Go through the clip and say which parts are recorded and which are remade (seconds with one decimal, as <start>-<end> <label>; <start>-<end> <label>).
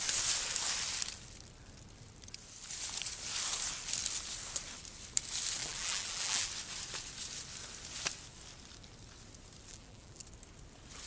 0.0-5.6 recorded; 5.6-6.5 remade; 6.5-9.7 recorded; 9.7-10.2 remade; 10.2-11.1 recorded